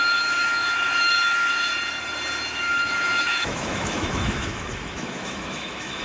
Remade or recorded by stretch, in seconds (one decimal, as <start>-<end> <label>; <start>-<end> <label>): 0.0-1.7 remade; 1.7-2.5 recorded; 2.5-6.0 remade